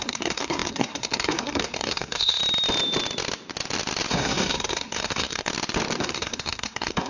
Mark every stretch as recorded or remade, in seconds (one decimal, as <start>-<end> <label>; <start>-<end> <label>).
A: 0.0-2.4 remade; 2.4-4.1 recorded; 4.1-5.5 remade; 5.5-6.0 recorded; 6.0-7.1 remade